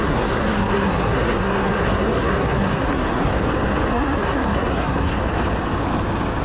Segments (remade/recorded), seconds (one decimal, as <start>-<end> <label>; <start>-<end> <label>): 0.0-3.3 remade; 3.3-3.9 recorded; 3.9-5.1 remade; 5.1-6.4 recorded